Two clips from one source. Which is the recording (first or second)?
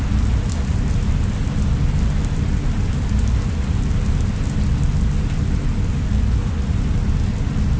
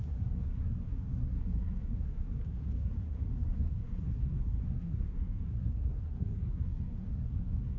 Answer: first